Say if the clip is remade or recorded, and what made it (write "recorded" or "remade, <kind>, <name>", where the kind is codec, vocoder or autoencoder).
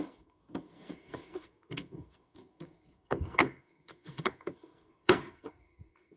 remade, codec, SNAC